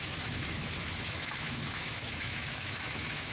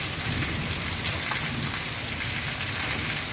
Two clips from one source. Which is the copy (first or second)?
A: first